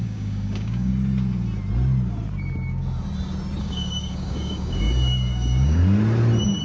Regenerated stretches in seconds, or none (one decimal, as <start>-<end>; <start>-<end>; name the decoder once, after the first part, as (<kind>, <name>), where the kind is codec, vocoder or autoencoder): 0.0-0.9 (codec, DAC); 3.6-5.8